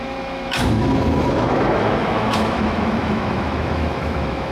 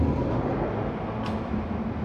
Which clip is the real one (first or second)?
second